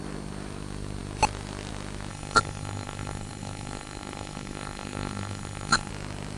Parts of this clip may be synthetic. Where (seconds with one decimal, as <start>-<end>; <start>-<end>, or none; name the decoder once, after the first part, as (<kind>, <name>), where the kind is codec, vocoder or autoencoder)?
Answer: 2.1-5.9 (codec, SNAC)